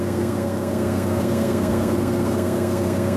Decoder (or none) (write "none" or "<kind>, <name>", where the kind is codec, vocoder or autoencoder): codec, SNAC